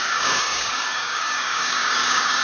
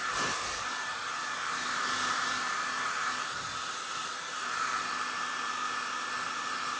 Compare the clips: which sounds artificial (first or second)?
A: first